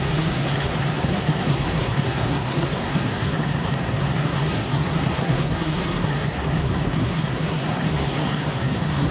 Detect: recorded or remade remade